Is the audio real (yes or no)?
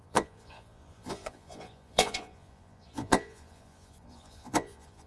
no